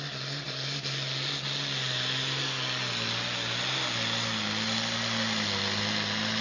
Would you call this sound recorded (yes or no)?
yes